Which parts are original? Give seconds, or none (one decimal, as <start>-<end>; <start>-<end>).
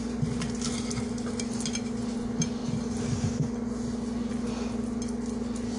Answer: 0.0-5.8